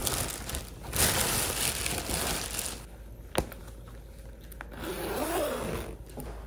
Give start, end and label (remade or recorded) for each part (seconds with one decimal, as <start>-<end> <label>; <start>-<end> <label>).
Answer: 0.0-6.5 recorded